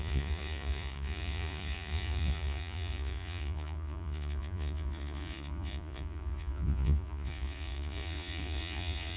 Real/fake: fake